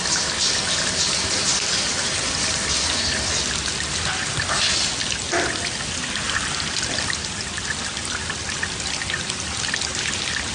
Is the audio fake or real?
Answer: real